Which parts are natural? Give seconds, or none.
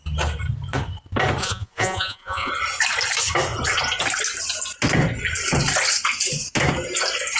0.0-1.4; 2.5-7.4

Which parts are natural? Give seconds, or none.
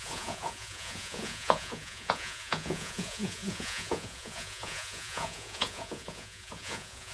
none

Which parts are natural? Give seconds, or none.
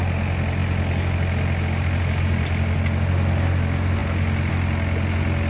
0.0-5.5